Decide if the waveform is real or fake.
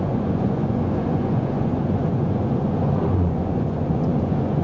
fake